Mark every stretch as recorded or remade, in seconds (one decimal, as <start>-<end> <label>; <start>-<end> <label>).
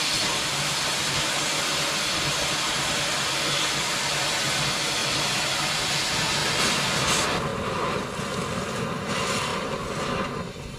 0.0-5.0 recorded; 5.0-5.7 remade; 5.7-9.5 recorded; 9.5-10.1 remade; 10.1-10.8 recorded